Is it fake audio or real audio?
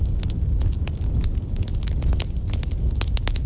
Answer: real